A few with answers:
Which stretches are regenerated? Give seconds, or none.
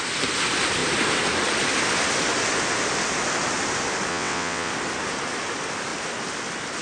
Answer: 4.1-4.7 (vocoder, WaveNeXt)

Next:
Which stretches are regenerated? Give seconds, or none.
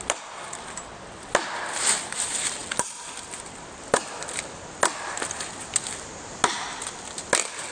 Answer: none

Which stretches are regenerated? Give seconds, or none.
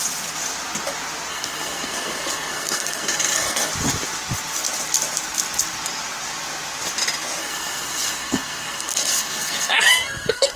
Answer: 1.3-3.7 (codec, SNAC); 7.4-10.6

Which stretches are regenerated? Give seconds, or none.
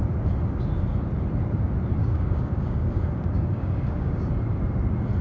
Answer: 2.0-4.3 (codec, DAC)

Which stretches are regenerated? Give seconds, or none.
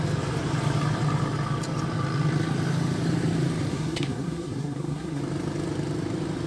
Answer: 3.7-5.2 (codec, SNAC)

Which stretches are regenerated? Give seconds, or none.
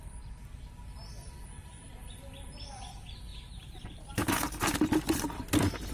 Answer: 3.3-4.4 (vocoder, BigVGAN v2)